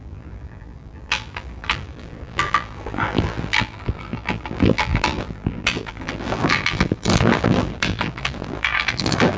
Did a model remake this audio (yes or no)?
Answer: yes